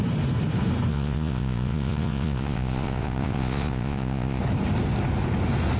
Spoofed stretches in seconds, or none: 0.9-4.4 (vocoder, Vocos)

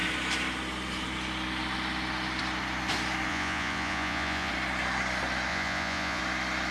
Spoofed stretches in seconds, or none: 3.3-4.5 (vocoder, Vocos); 5.5-6.2